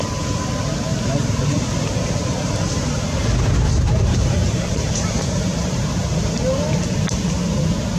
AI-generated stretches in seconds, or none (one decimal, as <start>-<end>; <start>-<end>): 0.9-5.7